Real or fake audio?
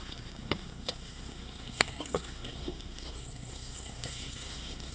fake